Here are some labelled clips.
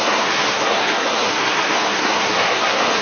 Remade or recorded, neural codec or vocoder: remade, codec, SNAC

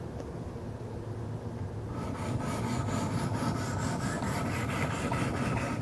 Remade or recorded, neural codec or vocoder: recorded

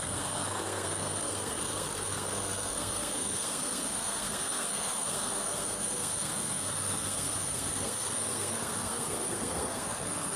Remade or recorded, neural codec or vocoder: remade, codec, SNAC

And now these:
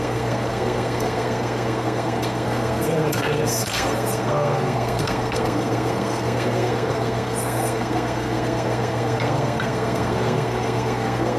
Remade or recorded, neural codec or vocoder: remade, codec, SNAC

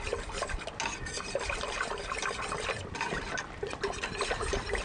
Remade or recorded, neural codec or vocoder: recorded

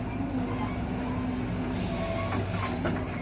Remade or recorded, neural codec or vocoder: recorded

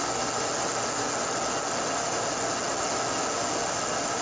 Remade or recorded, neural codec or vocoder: recorded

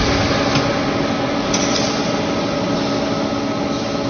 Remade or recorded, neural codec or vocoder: recorded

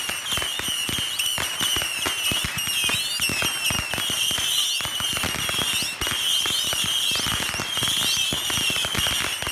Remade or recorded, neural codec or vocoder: recorded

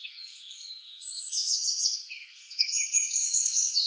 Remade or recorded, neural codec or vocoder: remade, codec, SNAC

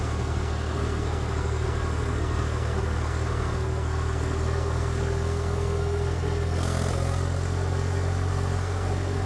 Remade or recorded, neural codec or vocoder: remade, codec, SNAC